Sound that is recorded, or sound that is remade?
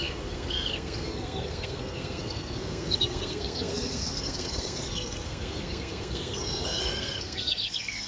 remade